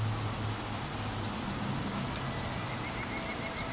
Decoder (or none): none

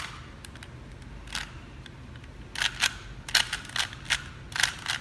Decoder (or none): none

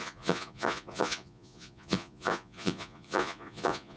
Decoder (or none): vocoder, Vocos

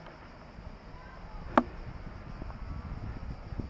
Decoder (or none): none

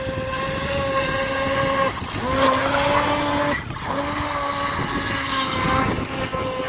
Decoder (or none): none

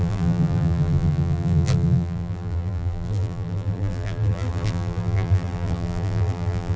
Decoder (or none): vocoder, BigVGAN v2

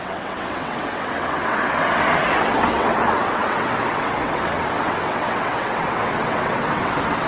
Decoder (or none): vocoder, WaveNeXt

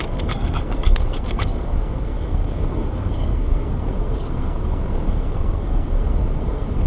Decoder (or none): codec, SNAC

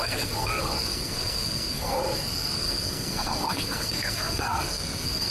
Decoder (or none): codec, SNAC